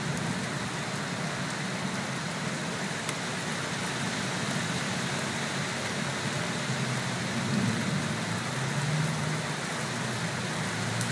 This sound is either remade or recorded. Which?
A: recorded